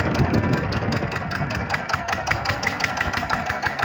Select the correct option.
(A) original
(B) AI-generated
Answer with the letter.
B